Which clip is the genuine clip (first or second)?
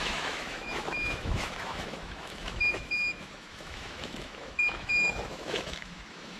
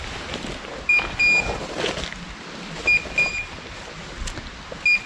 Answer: second